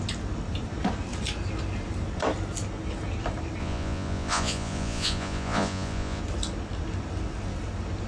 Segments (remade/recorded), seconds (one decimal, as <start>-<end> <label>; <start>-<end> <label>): 0.0-3.6 recorded; 3.6-6.2 remade; 6.2-8.1 recorded